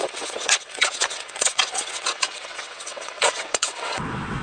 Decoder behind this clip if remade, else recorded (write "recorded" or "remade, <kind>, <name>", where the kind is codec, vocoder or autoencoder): remade, vocoder, WaveNeXt